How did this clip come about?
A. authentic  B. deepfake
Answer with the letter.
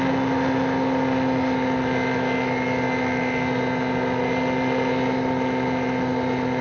A